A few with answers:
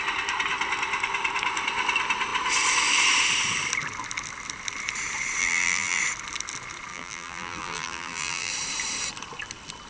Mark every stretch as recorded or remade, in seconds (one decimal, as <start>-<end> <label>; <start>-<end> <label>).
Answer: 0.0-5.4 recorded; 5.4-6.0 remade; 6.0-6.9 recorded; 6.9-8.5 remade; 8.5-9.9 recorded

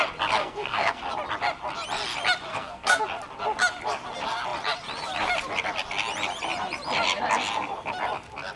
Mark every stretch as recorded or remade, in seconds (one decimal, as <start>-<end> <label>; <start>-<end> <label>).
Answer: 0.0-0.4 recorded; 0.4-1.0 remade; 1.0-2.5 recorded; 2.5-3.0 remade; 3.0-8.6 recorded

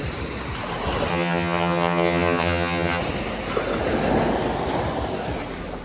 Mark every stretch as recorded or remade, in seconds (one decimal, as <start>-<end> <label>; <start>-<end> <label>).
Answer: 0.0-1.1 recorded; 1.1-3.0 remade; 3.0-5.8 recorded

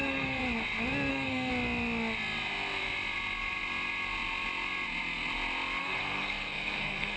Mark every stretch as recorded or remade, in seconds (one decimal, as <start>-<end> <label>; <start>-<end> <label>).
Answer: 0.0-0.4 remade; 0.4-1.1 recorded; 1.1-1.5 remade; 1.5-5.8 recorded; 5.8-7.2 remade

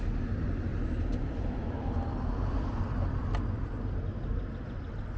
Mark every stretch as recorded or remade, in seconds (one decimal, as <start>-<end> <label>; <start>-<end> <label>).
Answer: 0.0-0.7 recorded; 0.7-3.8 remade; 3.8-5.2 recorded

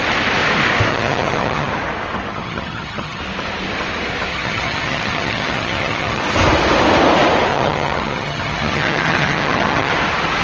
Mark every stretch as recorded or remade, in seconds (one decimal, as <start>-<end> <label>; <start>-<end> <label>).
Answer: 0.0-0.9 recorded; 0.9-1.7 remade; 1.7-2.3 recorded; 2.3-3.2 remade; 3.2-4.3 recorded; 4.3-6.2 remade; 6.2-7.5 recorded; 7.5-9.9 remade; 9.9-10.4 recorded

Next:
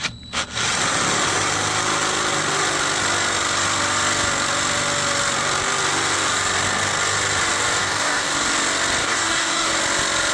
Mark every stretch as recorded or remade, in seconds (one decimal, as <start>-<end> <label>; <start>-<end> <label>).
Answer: 0.0-7.8 recorded; 7.8-8.3 remade; 8.3-9.0 recorded; 9.0-9.7 remade; 9.7-10.3 recorded

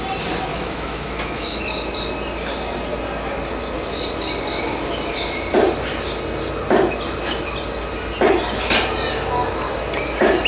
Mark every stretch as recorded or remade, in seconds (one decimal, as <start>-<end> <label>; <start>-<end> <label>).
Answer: 0.0-0.5 recorded; 0.5-1.6 remade; 1.6-10.5 recorded